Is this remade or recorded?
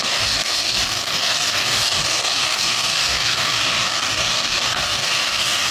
remade